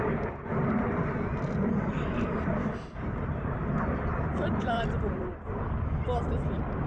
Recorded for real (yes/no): no